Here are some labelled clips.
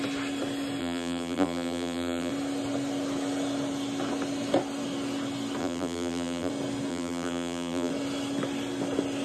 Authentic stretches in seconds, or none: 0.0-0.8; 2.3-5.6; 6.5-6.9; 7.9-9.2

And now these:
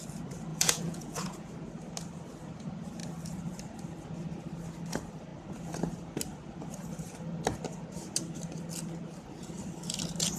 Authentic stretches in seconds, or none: 0.0-0.5; 1.5-10.4

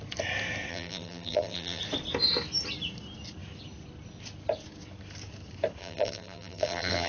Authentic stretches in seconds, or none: 0.0-0.7; 1.8-5.8

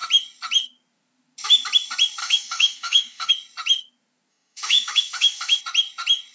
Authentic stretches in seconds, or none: 0.0-2.2; 3.3-4.3; 5.6-6.3

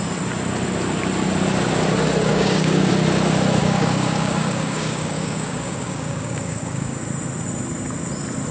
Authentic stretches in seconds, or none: 0.0-2.3; 2.9-3.6; 7.0-8.5